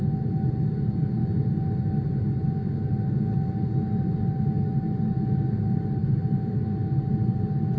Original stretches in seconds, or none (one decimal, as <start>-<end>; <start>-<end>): 0.0-7.8